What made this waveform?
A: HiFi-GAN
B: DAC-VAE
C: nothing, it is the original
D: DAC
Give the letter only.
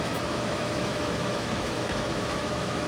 B